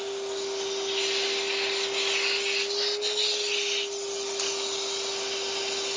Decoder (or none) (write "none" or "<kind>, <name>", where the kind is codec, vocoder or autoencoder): none